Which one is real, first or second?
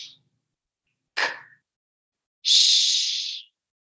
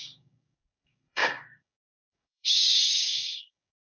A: first